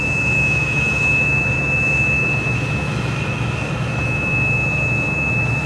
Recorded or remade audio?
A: remade